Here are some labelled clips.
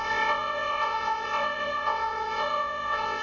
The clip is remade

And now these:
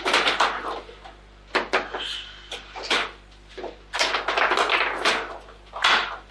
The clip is recorded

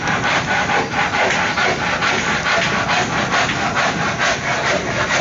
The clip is recorded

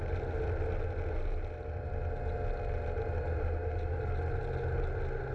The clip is recorded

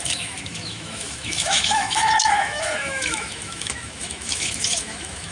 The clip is remade